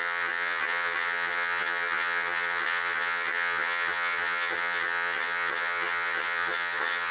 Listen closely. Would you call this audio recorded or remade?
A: remade